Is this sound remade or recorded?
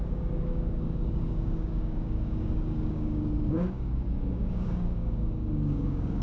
remade